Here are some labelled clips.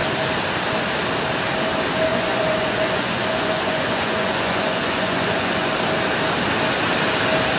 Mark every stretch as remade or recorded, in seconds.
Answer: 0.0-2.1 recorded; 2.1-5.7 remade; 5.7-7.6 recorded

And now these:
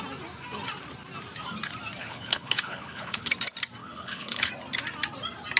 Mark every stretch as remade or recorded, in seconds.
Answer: 0.0-2.0 recorded; 2.0-3.3 remade; 3.3-3.8 recorded; 3.8-4.5 remade; 4.5-5.6 recorded

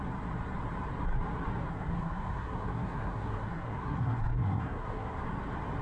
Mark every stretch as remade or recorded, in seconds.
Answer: 0.0-1.7 recorded; 1.7-5.2 remade; 5.2-5.8 recorded

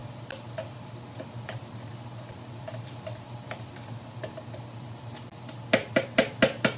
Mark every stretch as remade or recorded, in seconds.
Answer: 0.0-6.8 recorded